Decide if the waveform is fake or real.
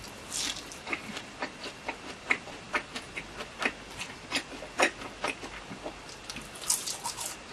real